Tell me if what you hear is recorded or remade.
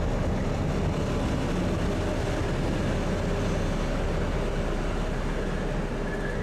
recorded